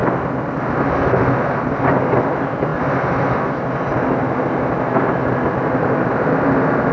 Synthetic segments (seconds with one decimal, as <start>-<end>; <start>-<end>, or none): none